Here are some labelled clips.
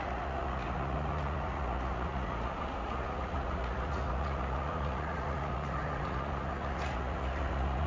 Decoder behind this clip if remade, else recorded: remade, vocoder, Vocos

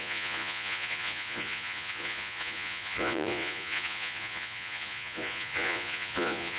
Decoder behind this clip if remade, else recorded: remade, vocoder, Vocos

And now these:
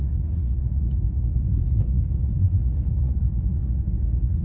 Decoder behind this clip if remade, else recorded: remade, vocoder, Vocos